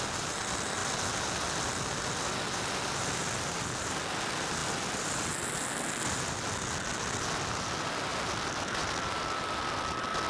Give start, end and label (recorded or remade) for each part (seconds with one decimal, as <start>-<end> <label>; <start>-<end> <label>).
0.0-10.3 recorded